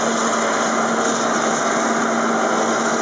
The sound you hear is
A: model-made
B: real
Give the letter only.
B